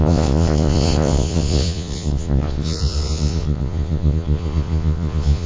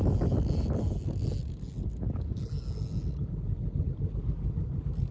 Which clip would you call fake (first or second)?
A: first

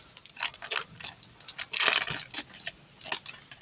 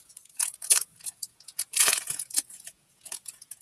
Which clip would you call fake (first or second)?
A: second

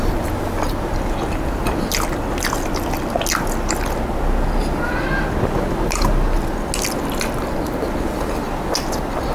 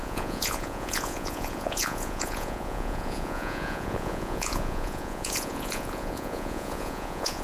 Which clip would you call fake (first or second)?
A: second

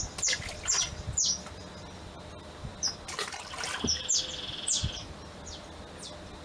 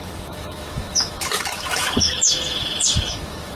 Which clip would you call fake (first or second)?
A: second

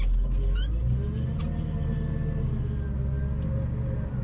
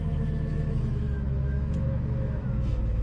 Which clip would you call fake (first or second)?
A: second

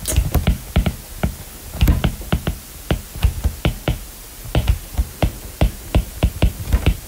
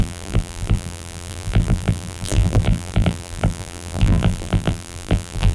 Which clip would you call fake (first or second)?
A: second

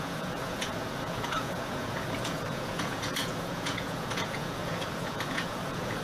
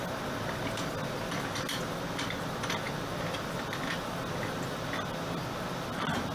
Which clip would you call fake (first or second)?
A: first